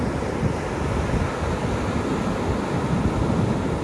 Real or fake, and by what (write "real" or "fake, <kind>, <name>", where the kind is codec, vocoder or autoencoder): real